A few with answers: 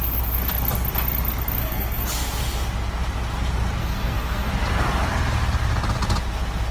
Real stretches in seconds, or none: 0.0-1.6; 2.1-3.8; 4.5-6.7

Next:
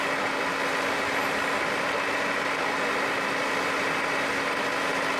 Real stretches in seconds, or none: 0.0-5.2

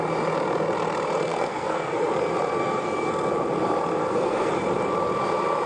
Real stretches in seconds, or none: 0.0-1.3; 2.1-2.6; 3.3-4.0; 4.5-5.7

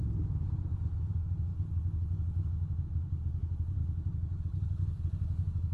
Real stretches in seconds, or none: 0.0-5.7

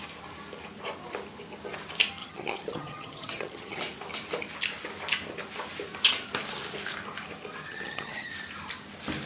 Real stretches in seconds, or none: 0.0-2.2; 3.8-7.6; 8.3-9.3

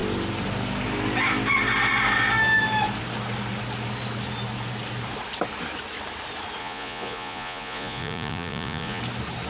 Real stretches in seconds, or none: 0.0-6.6; 9.0-9.5

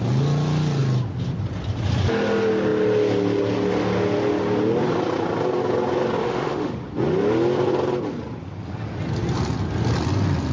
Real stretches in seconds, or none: 0.0-6.2; 6.7-10.5

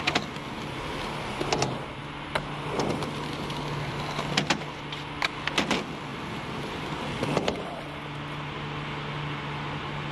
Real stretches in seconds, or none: 0.0-10.1